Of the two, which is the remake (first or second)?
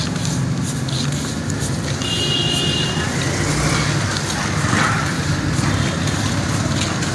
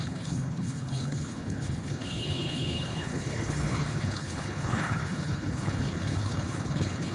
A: second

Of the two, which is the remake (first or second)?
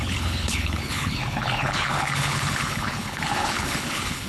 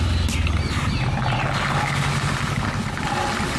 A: first